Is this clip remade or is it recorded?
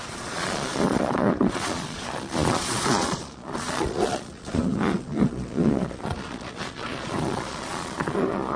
remade